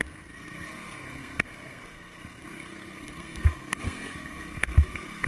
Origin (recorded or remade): remade